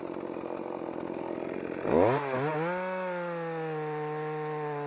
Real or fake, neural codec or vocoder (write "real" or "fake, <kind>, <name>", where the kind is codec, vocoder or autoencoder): real